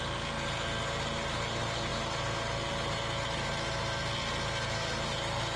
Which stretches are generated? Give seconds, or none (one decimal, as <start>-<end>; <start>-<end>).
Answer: none